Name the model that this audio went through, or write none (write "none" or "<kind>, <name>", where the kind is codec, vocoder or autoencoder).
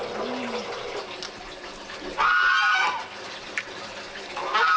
none